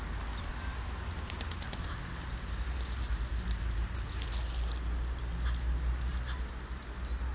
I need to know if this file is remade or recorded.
recorded